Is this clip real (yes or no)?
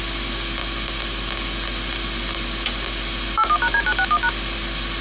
yes